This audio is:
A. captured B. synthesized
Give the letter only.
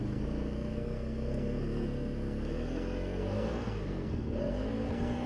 B